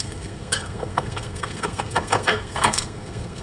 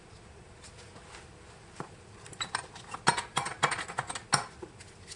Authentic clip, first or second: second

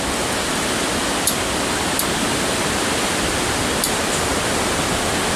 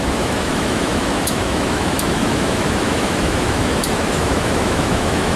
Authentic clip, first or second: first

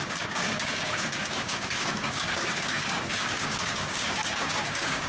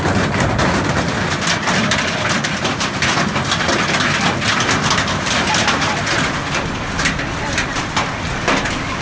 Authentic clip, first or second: second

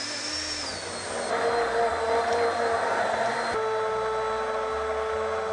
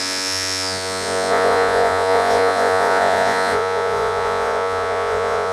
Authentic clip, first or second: first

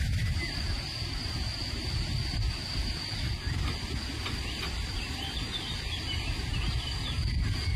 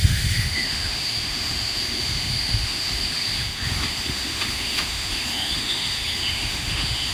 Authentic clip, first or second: first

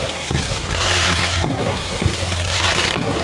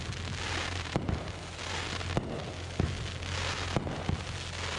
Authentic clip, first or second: second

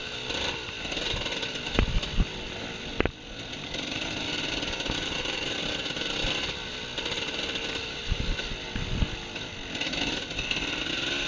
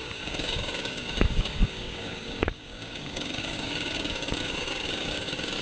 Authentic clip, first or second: first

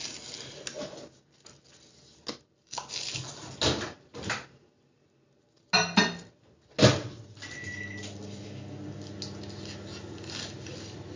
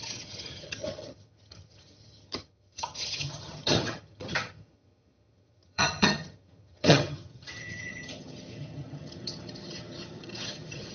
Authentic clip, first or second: first